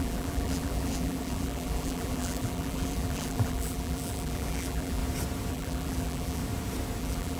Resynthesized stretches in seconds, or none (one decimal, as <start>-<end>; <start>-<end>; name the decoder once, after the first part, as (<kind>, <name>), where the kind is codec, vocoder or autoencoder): 0.0-5.0 (vocoder, BigVGAN v2); 5.5-6.4; 7.0-7.4